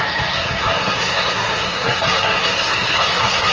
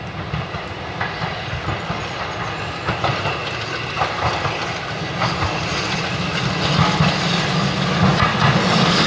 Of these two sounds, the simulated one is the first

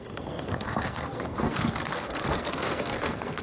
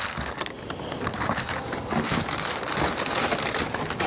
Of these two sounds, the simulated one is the first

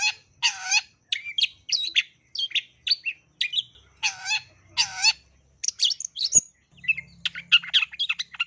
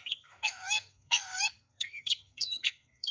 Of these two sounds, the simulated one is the second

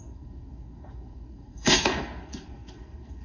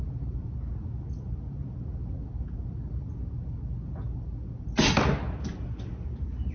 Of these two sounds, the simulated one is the first